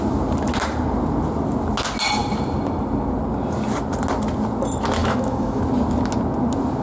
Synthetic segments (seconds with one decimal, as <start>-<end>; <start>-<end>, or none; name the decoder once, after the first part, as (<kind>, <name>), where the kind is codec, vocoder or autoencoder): 5.0-5.6 (autoencoder, DAC-VAE)